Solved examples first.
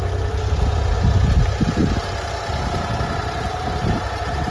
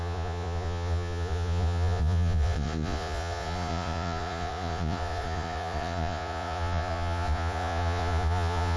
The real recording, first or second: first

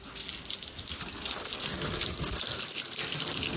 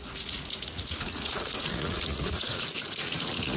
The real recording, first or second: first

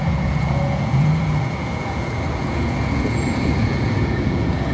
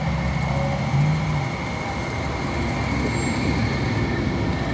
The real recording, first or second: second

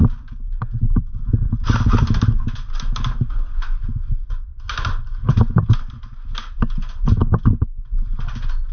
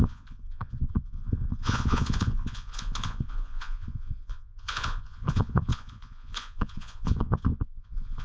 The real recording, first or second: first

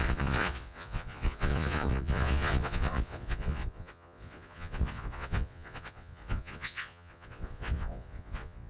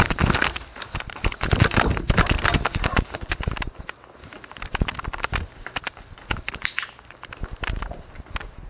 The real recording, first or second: second